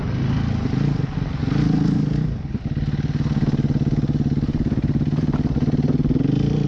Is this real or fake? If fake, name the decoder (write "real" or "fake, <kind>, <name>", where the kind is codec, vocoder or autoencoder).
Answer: real